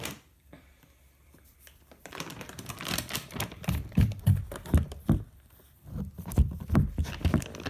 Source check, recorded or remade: remade